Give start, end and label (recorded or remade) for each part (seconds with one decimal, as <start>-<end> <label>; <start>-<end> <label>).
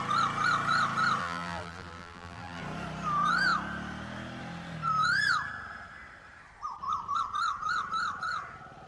0.0-1.2 recorded; 1.2-2.6 remade; 2.6-8.9 recorded